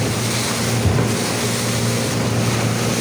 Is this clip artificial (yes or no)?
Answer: no